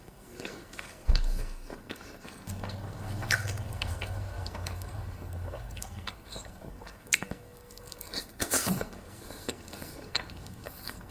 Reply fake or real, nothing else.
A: fake